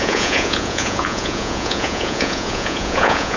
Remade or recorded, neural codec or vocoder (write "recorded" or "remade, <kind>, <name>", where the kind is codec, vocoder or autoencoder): remade, vocoder, Vocos